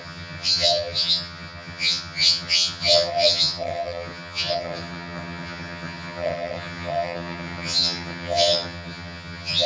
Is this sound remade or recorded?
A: remade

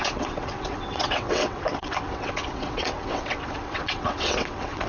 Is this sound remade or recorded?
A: remade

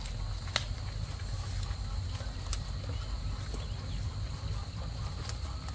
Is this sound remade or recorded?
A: recorded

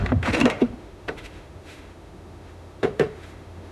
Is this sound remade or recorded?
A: remade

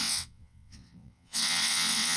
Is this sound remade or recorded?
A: remade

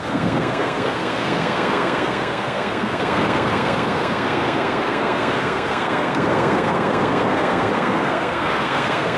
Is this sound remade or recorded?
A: remade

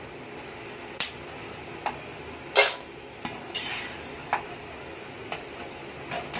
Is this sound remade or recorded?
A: recorded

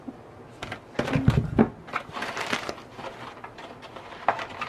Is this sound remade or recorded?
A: recorded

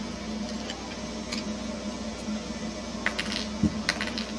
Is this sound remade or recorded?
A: recorded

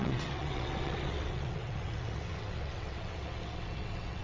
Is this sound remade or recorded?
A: remade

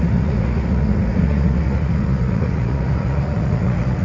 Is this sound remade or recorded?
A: remade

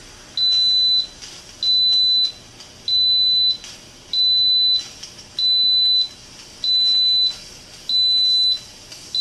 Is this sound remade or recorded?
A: recorded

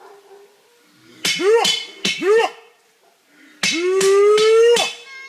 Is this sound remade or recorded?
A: recorded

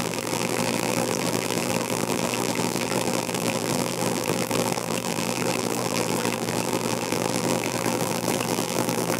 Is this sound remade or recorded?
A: remade